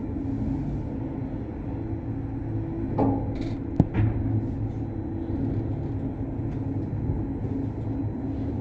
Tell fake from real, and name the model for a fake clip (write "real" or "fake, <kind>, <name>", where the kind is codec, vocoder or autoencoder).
real